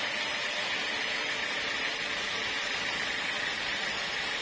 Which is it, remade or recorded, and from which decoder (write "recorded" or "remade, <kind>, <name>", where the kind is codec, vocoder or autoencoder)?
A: recorded